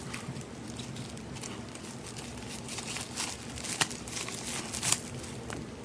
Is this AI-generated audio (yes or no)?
no